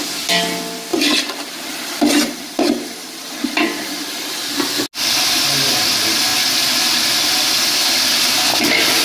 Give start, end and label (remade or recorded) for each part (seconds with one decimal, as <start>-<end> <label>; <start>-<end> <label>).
0.0-0.9 recorded; 0.9-3.6 remade; 3.6-9.0 recorded